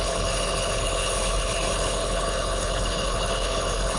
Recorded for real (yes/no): no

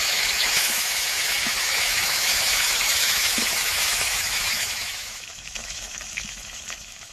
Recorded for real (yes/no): no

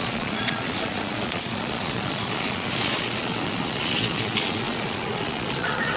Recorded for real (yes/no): no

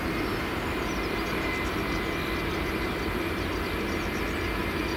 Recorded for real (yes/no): yes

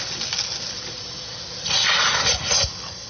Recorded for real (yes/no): yes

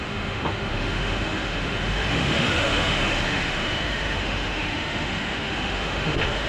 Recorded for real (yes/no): no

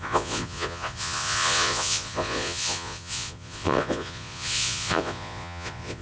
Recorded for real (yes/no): no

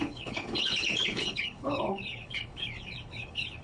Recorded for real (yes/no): no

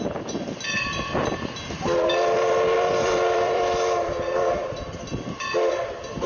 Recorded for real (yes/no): no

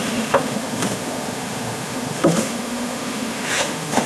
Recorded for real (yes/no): no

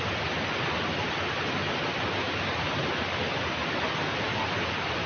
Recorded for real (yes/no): yes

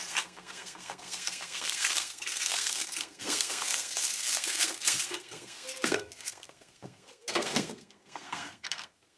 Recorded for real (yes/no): no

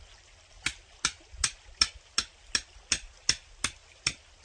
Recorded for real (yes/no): yes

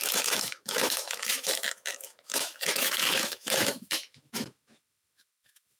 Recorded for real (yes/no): no